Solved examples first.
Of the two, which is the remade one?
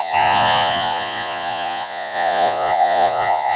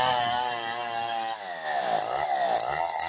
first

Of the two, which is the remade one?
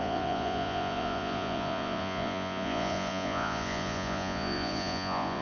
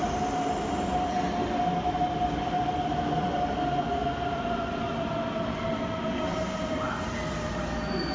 first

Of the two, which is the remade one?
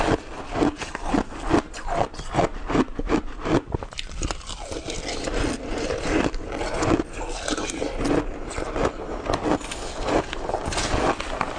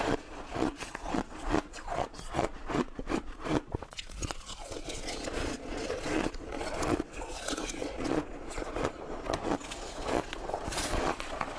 second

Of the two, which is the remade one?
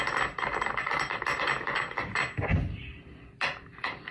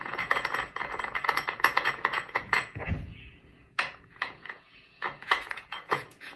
second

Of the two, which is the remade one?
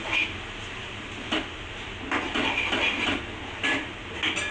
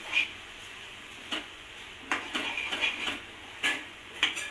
second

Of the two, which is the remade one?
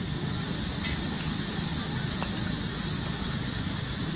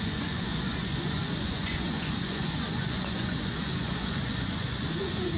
second